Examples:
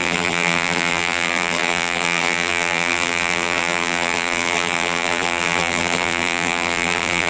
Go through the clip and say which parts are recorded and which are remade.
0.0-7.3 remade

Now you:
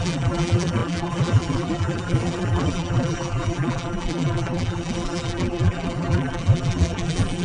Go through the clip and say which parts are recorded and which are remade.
0.0-7.4 remade

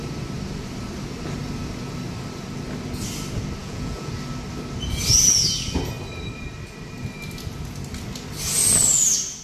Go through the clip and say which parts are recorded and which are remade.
0.0-3.6 recorded; 3.6-4.1 remade; 4.1-9.4 recorded

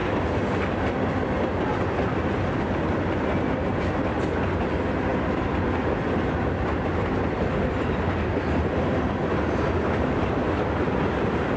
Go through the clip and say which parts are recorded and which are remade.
0.0-11.6 recorded

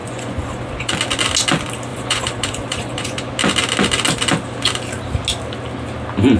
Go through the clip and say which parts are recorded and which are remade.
0.0-0.9 remade; 0.9-1.9 recorded; 1.9-3.3 remade; 3.3-6.4 recorded